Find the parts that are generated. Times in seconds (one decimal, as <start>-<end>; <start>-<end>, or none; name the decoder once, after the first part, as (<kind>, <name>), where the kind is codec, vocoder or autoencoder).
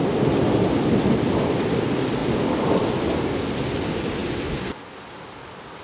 none